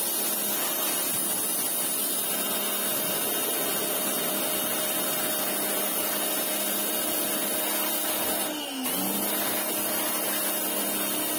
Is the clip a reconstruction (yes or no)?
no